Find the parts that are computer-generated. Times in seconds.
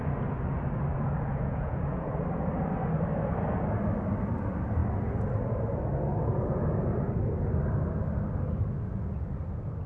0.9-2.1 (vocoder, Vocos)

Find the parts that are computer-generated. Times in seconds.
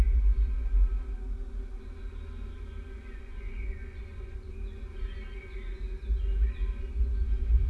3.2-4.5 (vocoder, Vocos)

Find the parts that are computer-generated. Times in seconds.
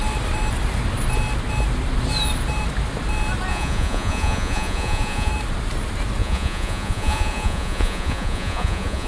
3.5-5.3 (vocoder, Vocos); 6.2-9.1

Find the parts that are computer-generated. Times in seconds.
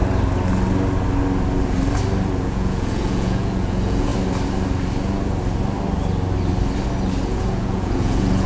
2.4-4.1 (vocoder, Vocos); 7.2-8.5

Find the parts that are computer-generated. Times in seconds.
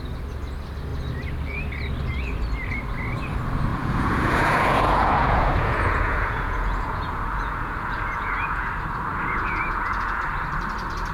3.7-8.7 (vocoder, Vocos); 9.1-10.2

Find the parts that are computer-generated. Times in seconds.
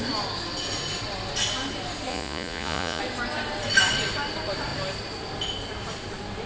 2.1-3.0 (vocoder, Vocos)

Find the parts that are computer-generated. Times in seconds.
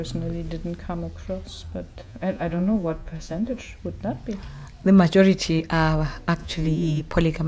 2.0-3.7 (vocoder, Vocos); 6.4-7.0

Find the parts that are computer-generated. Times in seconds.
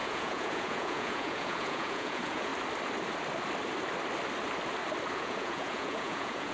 0.0-2.5 (vocoder, Vocos); 5.1-6.5